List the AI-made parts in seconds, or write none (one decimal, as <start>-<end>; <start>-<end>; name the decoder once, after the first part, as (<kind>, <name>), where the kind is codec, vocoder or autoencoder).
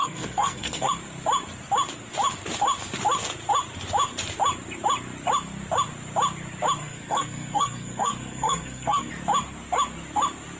0.0-0.9 (codec, SNAC); 6.8-9.1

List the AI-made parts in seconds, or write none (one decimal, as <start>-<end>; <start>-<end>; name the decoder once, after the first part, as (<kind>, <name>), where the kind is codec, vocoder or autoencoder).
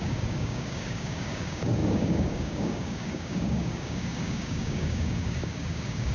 0.0-6.1 (codec, DAC)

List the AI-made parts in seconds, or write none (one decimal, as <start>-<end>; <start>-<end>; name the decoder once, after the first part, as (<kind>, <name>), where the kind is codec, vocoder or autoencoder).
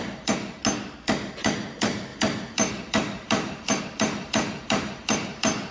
0.0-0.6 (vocoder, BigVGAN v2); 1.3-5.7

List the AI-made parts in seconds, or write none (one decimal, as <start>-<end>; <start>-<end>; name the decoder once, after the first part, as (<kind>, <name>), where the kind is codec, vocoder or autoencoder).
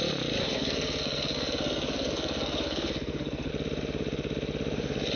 0.4-3.5 (codec, SNAC)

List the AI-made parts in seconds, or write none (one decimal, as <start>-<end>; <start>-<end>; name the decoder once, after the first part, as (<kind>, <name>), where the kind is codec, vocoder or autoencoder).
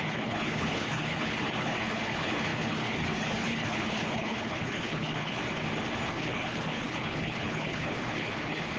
0.0-5.4 (codec, HILCodec); 6.1-8.8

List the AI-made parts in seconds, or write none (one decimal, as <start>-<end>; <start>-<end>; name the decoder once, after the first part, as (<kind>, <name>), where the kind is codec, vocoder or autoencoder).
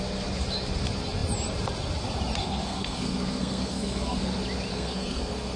2.4-4.3 (codec, SNAC); 4.7-5.6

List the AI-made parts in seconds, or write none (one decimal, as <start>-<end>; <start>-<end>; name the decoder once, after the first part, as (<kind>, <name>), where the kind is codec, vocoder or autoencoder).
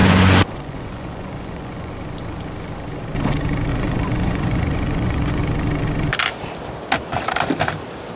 0.0-1.9 (vocoder, Vocos); 3.7-5.4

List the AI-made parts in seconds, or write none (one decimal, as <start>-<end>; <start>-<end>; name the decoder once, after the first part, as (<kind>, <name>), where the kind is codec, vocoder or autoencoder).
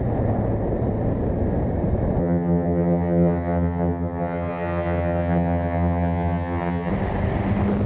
2.2-6.9 (vocoder, HiFi-GAN)